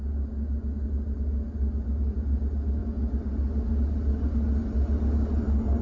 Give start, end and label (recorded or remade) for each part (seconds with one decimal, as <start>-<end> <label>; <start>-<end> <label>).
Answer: 0.0-5.8 recorded